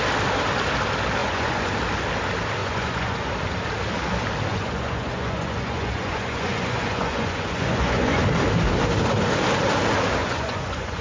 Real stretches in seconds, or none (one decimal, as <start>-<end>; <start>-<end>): 0.0-1.2; 1.7-2.6; 3.2-4.5; 8.2-10.2